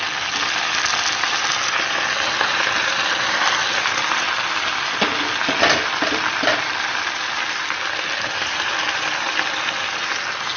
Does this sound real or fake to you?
real